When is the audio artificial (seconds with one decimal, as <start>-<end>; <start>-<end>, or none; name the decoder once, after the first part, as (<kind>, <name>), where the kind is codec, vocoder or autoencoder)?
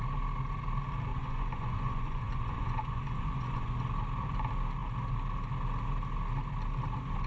1.1-3.8 (vocoder, Vocos)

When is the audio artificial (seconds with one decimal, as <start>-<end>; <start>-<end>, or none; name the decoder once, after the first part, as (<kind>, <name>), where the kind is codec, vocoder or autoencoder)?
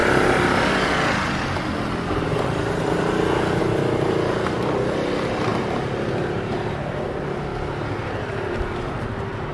none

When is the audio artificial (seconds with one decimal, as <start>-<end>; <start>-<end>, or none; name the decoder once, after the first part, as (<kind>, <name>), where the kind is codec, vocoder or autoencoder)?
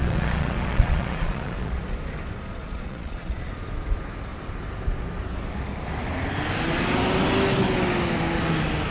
0.0-1.8 (vocoder, Vocos); 2.6-3.5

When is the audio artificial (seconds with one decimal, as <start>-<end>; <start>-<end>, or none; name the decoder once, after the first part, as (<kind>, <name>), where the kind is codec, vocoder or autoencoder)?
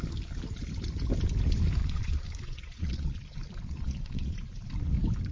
1.8-4.7 (vocoder, Vocos)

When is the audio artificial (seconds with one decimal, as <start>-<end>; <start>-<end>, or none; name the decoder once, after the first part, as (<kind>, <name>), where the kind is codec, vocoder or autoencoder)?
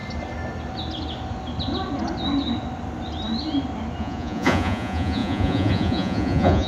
4.0-6.7 (vocoder, Vocos)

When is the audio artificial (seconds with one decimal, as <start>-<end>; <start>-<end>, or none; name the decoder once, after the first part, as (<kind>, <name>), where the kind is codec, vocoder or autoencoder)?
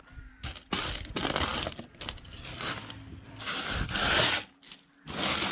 none